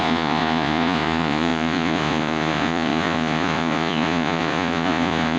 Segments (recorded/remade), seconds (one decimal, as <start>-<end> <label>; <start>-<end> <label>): 0.0-5.4 remade